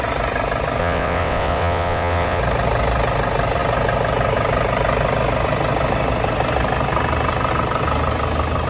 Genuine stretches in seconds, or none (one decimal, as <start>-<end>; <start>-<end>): 0.0-0.8; 2.4-8.7